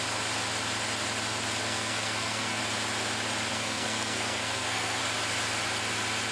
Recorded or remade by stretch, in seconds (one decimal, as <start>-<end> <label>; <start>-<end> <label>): 0.0-1.6 recorded; 1.6-2.6 remade; 2.6-3.5 recorded; 3.5-5.0 remade; 5.0-6.3 recorded